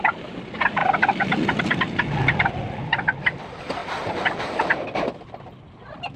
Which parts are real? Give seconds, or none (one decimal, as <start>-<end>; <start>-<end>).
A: 0.0-6.2